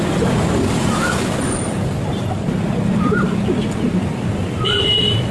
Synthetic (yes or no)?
no